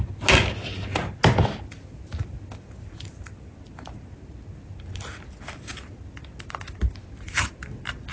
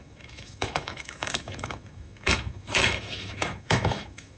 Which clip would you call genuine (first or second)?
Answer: first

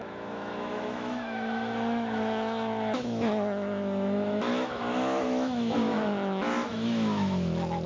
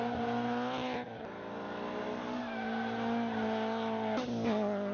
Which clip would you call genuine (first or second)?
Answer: second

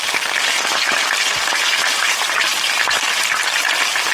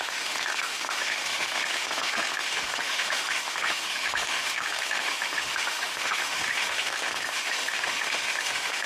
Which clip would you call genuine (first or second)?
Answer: first